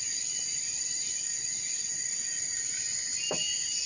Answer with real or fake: real